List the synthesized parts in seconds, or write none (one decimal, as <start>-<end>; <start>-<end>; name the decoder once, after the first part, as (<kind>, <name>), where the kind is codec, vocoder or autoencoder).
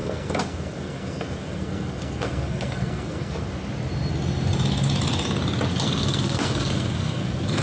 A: 0.0-3.5 (codec, SNAC); 5.7-7.6